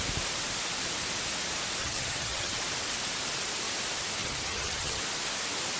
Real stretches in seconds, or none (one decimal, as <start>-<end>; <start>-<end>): 0.0-1.8; 2.6-4.2; 5.0-5.8